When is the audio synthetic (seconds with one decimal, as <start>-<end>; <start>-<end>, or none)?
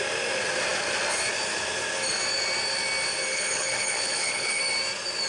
3.3-4.6